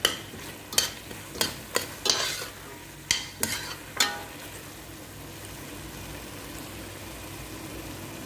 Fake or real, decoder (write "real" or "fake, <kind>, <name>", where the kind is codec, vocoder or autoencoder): real